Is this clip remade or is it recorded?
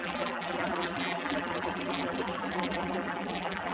remade